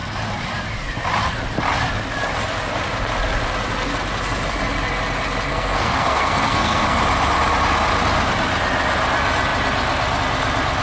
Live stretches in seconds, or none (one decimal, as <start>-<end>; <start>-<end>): 0.0-5.5; 7.0-10.8